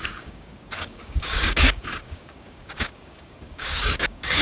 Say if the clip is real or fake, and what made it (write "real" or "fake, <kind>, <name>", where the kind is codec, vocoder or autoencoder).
fake, codec, DAC